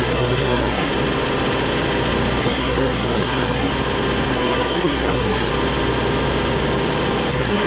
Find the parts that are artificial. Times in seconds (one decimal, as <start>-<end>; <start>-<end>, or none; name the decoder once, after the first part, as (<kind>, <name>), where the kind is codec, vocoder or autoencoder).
0.0-0.9 (codec, SNAC); 2.4-3.7; 4.3-5.5; 7.3-7.7